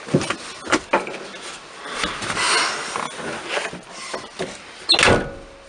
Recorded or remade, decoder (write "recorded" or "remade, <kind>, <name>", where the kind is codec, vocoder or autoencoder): recorded